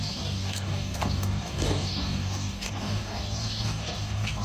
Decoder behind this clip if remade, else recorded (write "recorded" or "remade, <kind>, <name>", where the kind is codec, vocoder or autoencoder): remade, codec, DAC